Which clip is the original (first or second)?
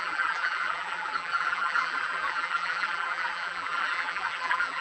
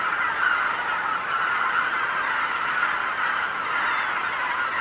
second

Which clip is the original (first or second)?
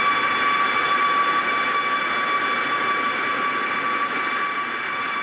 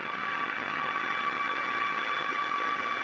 first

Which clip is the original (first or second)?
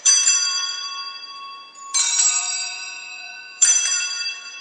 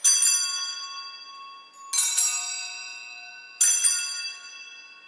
second